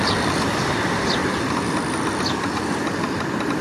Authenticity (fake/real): fake